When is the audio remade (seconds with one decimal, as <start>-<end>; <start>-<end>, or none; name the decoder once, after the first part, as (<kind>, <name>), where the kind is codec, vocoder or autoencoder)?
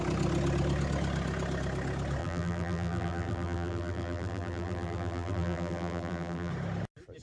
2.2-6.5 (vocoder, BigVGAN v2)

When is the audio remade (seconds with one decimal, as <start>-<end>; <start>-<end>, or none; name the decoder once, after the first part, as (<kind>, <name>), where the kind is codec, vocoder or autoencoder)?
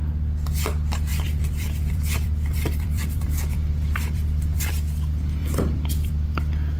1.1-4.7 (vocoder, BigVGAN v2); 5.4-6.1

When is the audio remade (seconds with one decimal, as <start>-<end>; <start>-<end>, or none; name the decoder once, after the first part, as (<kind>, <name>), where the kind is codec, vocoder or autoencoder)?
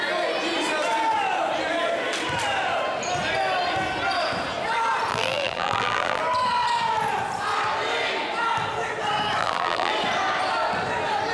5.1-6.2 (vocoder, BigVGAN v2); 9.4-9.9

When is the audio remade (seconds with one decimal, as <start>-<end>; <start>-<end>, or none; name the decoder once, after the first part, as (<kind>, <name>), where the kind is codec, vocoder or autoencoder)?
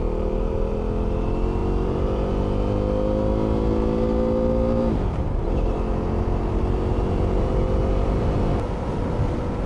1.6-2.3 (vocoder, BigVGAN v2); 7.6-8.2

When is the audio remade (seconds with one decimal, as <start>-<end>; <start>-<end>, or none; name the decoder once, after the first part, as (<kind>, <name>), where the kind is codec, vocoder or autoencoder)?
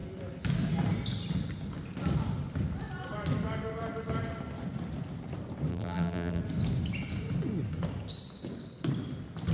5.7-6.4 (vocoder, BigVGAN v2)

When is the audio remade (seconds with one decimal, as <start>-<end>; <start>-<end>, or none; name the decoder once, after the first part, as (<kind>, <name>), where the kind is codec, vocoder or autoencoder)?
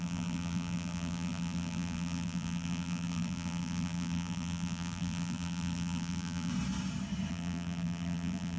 0.0-6.5 (vocoder, BigVGAN v2); 7.3-8.6